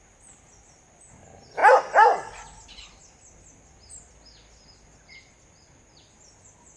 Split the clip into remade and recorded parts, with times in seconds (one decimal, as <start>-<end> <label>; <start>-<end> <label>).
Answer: 0.0-6.8 recorded